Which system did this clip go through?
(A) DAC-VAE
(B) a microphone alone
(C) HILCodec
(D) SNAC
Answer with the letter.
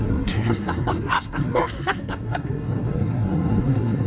D